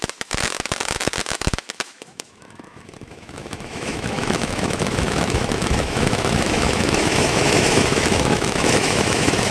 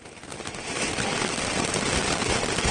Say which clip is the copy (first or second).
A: first